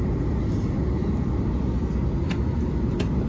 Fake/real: real